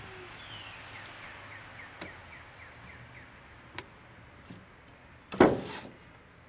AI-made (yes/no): no